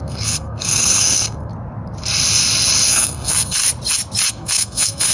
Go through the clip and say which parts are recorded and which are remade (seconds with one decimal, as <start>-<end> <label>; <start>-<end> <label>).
0.0-1.5 remade; 1.5-2.9 recorded; 2.9-3.6 remade; 3.6-4.3 recorded; 4.3-5.1 remade